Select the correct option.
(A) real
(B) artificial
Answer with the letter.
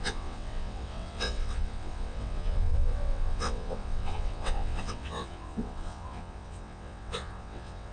B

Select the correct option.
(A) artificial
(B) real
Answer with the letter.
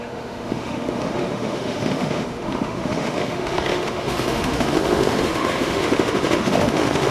A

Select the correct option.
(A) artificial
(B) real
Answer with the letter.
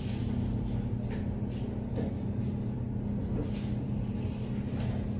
B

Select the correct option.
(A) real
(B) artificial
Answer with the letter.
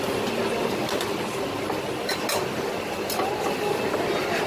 A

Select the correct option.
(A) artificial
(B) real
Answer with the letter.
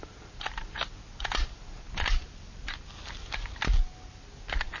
B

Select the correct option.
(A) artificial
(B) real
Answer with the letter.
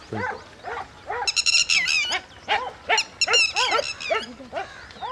B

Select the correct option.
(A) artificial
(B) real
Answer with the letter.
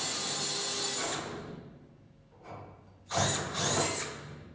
B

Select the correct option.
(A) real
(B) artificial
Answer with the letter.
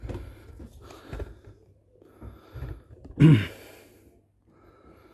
A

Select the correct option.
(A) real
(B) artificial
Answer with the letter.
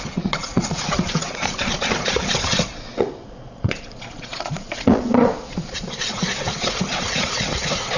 B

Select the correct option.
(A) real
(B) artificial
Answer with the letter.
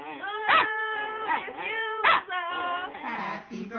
B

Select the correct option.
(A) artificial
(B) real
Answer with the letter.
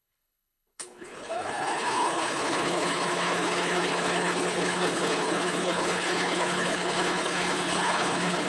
A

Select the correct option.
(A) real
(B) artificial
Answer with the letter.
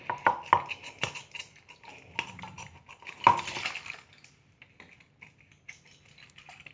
A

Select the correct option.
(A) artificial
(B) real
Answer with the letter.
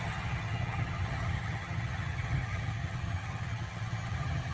A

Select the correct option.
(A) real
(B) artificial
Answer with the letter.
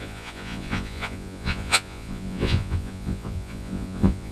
B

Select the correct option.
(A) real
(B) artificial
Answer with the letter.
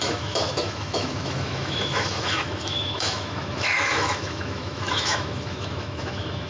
B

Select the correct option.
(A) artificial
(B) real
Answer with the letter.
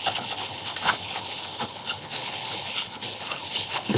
A